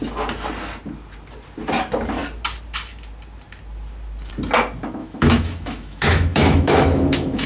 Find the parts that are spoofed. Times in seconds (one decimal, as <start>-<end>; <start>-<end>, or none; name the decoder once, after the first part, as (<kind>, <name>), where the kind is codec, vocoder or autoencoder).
5.0-7.5 (autoencoder, DAC-VAE)